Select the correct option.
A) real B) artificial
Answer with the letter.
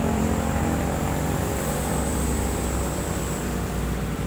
B